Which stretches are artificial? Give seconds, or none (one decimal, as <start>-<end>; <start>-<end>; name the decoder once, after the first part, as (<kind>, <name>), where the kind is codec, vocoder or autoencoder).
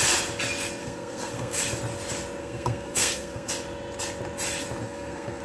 0.8-1.6 (codec, SNAC); 2.4-3.5; 4.8-5.4